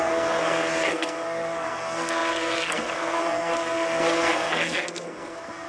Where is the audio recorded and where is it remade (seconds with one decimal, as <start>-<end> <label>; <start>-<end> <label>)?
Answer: 0.0-5.7 remade